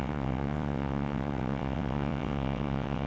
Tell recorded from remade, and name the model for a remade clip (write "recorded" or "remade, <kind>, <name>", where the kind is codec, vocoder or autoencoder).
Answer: remade, vocoder, WaveNeXt